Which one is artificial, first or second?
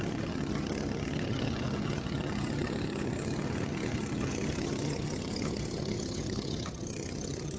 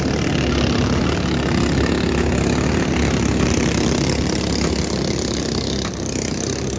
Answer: first